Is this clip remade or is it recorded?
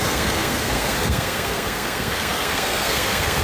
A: remade